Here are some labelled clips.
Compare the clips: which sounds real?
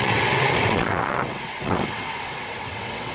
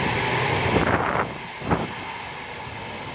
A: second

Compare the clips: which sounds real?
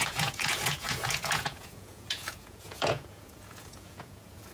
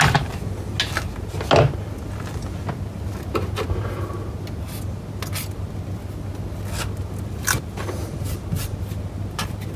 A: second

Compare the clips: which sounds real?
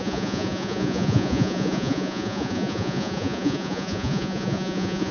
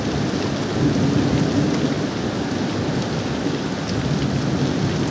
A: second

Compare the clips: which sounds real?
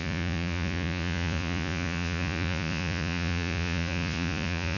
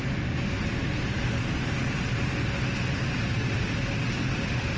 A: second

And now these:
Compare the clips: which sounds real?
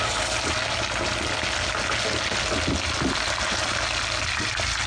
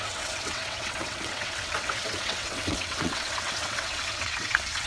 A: first